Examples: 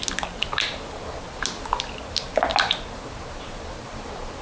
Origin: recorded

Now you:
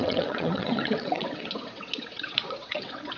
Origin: remade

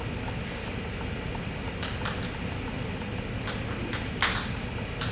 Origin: recorded